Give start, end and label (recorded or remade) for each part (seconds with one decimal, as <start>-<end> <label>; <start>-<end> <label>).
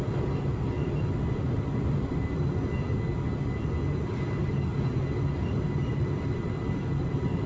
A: 0.0-7.5 recorded